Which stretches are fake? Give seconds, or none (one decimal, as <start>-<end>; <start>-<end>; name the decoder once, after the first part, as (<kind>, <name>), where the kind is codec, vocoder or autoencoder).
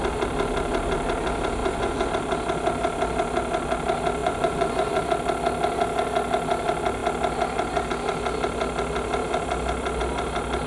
1.6-2.1 (vocoder, Vocos); 4.2-5.0